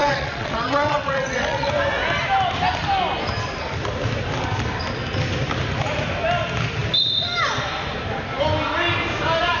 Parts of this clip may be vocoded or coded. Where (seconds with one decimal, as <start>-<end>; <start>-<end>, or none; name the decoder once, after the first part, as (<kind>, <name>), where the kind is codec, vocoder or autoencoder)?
0.0-1.7 (vocoder, WaveNeXt)